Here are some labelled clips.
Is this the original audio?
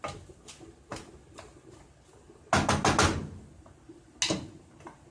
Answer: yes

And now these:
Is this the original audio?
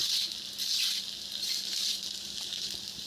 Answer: yes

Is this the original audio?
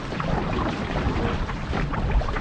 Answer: yes